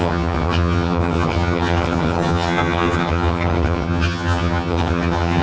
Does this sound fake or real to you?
fake